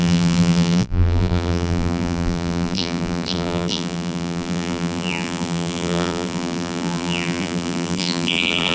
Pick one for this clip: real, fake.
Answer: fake